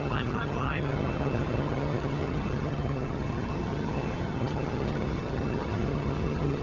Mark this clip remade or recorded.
remade